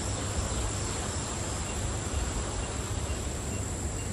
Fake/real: real